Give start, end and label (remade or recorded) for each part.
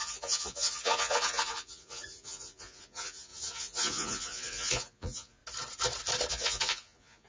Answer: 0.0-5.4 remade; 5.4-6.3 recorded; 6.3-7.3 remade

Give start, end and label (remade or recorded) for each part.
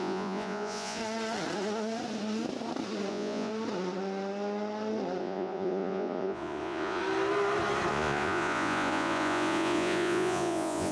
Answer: 0.0-1.0 remade; 1.0-3.1 recorded; 3.1-3.5 remade; 3.5-5.2 recorded; 5.2-7.0 remade; 7.0-7.9 recorded; 7.9-10.9 remade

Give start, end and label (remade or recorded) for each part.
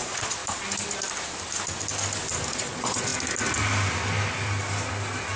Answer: 0.0-0.4 remade; 0.4-2.5 recorded; 2.5-3.1 remade; 3.1-5.4 recorded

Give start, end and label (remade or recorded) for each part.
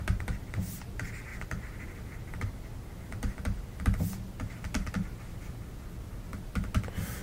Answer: 0.0-7.2 recorded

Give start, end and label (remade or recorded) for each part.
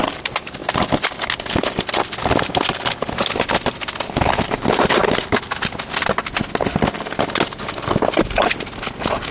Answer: 0.0-9.3 recorded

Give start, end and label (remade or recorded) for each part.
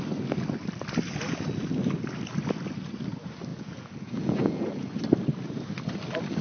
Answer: 0.0-3.5 recorded; 3.5-4.9 remade; 4.9-6.4 recorded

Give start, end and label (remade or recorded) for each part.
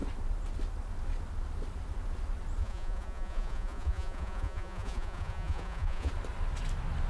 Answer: 0.0-2.6 recorded; 2.6-6.1 remade; 6.1-7.1 recorded